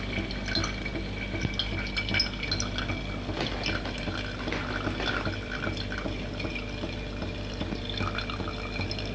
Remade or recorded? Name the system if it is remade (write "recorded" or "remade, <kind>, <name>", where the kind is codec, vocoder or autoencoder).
recorded